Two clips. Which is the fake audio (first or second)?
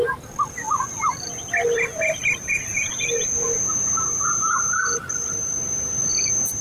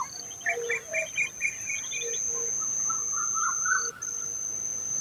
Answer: first